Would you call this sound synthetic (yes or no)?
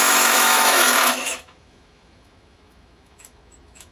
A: yes